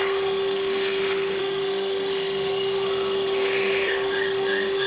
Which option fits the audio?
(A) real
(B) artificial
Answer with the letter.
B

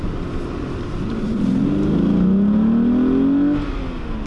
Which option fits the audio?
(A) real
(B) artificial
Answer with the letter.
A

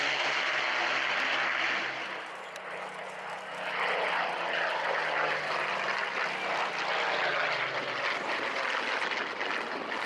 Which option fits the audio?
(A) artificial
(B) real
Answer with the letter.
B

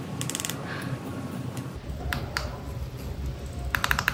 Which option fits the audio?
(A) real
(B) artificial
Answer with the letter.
A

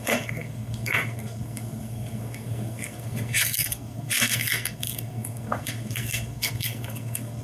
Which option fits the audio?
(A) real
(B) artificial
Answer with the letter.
B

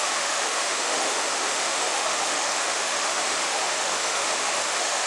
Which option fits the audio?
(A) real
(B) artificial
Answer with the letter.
B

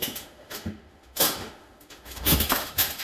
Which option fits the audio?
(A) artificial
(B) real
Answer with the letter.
A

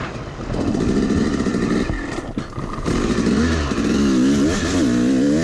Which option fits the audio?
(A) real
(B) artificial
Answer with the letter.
A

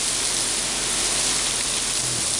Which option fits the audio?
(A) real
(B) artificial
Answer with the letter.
A